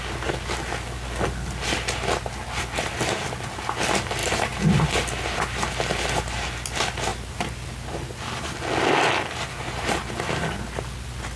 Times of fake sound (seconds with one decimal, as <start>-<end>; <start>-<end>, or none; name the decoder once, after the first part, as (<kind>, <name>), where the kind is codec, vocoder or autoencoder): none